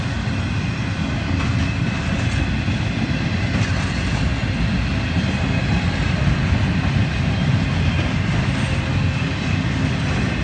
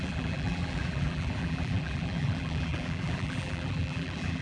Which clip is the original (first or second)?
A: first